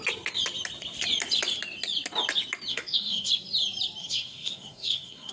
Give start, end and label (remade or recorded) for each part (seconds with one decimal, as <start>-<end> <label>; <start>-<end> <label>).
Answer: 0.0-2.7 recorded; 2.7-3.3 remade; 3.3-4.0 recorded; 4.0-5.3 remade